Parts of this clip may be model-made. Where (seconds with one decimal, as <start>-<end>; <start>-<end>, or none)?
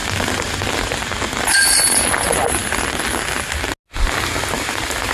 none